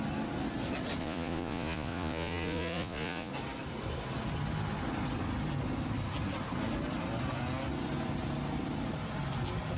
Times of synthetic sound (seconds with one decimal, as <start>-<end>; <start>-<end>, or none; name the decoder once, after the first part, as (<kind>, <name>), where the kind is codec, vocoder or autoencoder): 1.0-3.3 (vocoder, Vocos)